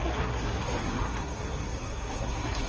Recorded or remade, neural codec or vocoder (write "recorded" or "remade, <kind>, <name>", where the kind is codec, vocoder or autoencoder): remade, codec, SNAC